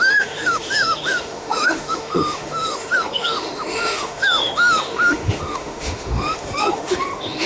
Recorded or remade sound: remade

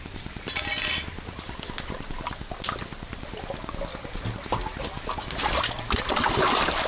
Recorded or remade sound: recorded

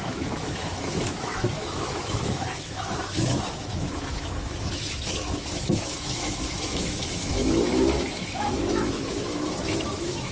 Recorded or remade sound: remade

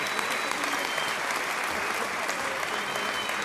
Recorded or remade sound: recorded